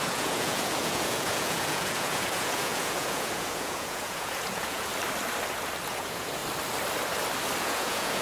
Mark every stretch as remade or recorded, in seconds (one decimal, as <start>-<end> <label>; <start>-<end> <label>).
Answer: 0.0-4.9 remade; 4.9-5.9 recorded; 5.9-6.4 remade; 6.4-7.6 recorded; 7.6-8.2 remade